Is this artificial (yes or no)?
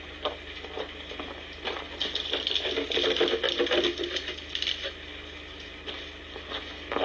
no